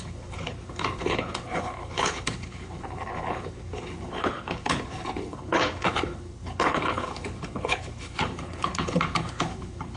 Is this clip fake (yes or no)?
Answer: yes